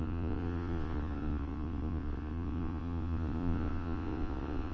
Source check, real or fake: fake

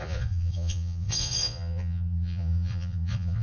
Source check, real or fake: fake